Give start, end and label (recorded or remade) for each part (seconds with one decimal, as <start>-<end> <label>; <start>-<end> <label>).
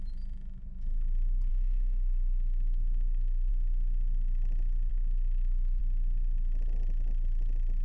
0.0-1.5 recorded; 1.5-3.5 remade; 3.5-4.9 recorded; 4.9-5.8 remade; 5.8-7.8 recorded